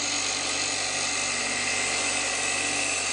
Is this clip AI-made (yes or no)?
no